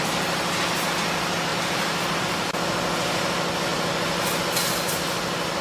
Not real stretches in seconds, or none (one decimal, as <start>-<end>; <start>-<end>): none